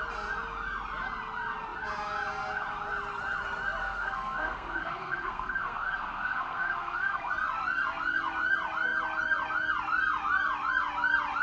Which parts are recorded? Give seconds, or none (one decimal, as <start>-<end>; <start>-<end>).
0.0-3.8; 7.3-11.4